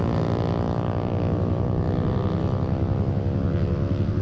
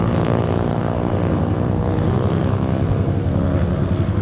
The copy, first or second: second